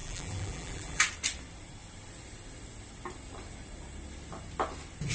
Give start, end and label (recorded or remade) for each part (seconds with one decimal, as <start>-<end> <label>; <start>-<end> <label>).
0.0-1.0 remade; 1.0-5.1 recorded